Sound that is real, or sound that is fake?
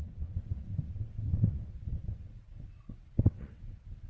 fake